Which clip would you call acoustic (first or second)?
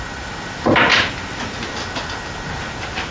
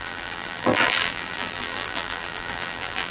first